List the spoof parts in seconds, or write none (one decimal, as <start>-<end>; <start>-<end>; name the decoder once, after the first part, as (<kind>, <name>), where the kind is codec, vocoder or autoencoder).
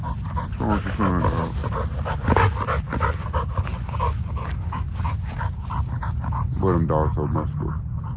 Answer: 1.6-2.1 (vocoder, BigVGAN v2); 3.7-4.4